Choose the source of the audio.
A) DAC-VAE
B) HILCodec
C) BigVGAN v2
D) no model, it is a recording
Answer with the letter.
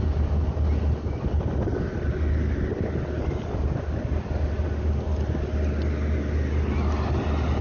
D